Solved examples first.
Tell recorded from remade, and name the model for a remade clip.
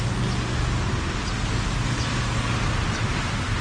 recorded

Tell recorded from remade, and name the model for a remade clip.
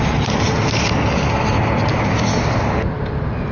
recorded